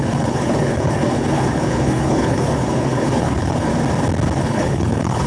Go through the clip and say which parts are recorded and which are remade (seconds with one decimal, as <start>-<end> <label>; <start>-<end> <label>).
0.0-3.7 remade; 3.7-4.4 recorded; 4.4-5.3 remade